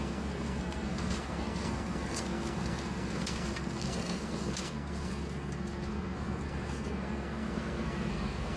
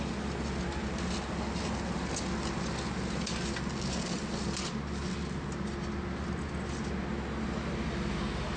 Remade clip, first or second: first